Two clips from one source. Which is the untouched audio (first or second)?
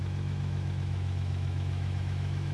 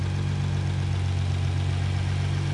second